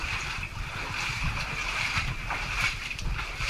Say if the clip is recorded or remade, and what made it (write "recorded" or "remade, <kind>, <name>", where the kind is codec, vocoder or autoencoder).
remade, vocoder, BigVGAN v2